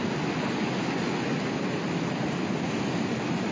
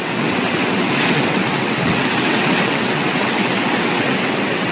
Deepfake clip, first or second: second